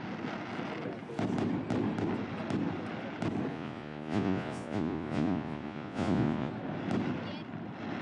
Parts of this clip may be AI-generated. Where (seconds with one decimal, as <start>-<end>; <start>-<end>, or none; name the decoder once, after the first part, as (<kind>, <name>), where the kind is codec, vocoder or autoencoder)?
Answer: 3.5-6.5 (vocoder, Vocos)